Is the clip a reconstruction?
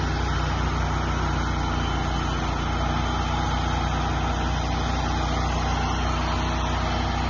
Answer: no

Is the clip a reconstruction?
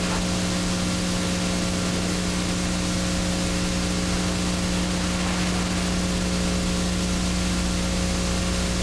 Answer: no